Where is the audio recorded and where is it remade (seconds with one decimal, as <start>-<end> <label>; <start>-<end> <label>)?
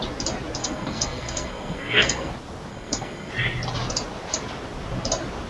0.0-0.6 recorded; 0.6-2.3 remade; 2.3-2.7 recorded; 2.7-3.3 remade; 3.3-5.5 recorded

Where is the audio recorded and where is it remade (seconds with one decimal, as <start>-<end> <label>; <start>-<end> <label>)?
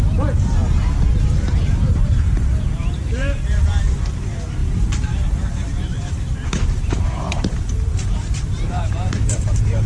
0.0-0.6 remade; 0.6-1.2 recorded; 1.2-9.9 remade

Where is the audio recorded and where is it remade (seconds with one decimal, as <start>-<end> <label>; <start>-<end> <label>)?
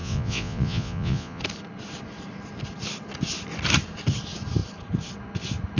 0.0-1.4 remade; 1.4-5.8 recorded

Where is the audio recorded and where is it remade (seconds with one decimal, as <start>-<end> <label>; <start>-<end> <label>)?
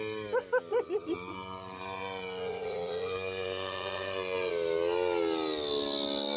0.0-0.7 recorded; 0.7-4.5 remade; 4.5-6.4 recorded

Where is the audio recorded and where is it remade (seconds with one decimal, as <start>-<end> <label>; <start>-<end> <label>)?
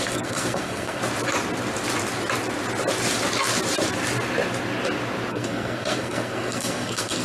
0.0-1.0 remade; 1.0-5.3 recorded; 5.3-7.2 remade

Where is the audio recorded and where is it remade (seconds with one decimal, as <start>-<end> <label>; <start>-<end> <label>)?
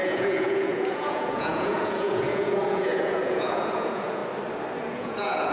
0.0-4.2 remade; 4.2-4.9 recorded; 4.9-5.5 remade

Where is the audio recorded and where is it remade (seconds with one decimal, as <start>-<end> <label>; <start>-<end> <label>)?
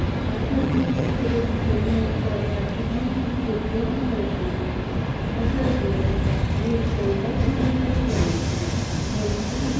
0.0-0.6 recorded; 0.6-1.1 remade; 1.1-9.8 recorded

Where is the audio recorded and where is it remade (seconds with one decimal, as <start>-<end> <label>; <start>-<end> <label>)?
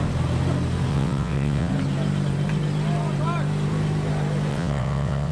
0.0-0.9 recorded; 0.9-1.7 remade; 1.7-4.5 recorded; 4.5-5.3 remade